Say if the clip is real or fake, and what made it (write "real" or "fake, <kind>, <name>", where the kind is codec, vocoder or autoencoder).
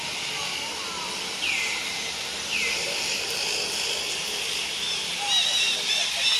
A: real